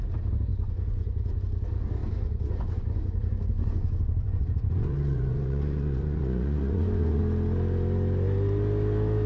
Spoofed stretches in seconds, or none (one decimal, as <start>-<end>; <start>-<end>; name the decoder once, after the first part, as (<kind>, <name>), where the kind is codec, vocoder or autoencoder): 0.5-1.3 (vocoder, Vocos); 2.0-7.2